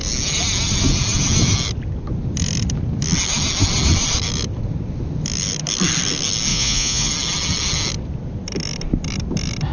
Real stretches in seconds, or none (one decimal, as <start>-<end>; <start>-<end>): 0.0-6.5; 7.1-9.7

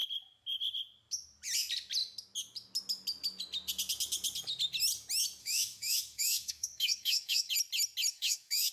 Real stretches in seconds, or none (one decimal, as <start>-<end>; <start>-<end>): 0.0-5.4; 7.5-8.1

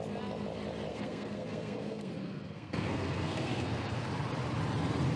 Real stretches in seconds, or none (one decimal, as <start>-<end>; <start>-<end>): 0.0-0.9; 4.0-5.2

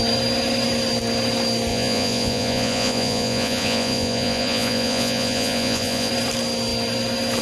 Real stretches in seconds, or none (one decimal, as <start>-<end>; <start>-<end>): 0.0-1.7; 6.1-7.4

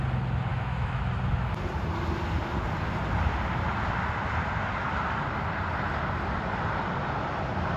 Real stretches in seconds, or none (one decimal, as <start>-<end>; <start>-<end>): 0.0-0.5; 1.0-7.8

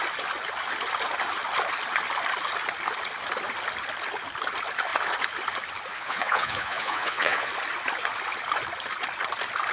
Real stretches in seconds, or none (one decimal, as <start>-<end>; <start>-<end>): 0.0-5.9; 7.5-9.7

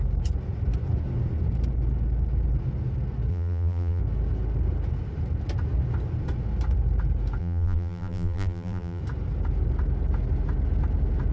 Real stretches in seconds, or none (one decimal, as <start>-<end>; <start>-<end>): 0.0-3.3; 4.0-7.4; 9.0-11.3